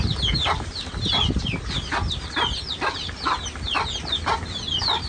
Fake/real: real